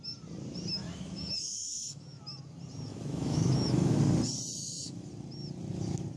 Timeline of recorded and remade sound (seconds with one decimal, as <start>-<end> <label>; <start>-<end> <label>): 0.0-0.8 recorded; 0.8-2.2 remade; 2.2-2.9 recorded; 2.9-4.0 remade; 4.0-4.6 recorded; 4.6-5.1 remade; 5.1-6.2 recorded